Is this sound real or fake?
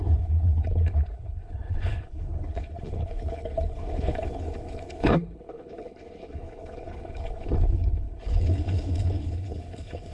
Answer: fake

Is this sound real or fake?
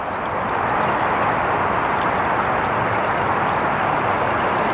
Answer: real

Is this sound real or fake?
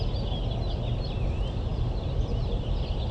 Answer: real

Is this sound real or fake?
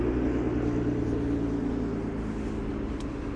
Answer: real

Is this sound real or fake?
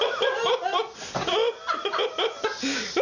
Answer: real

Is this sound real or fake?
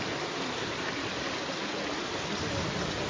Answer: real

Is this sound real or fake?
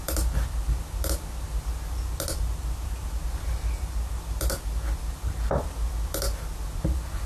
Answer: real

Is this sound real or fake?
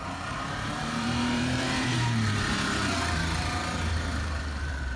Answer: fake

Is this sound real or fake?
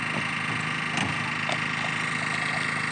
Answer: real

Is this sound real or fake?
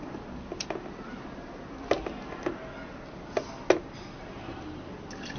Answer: real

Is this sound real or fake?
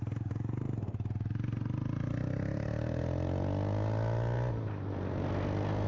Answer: real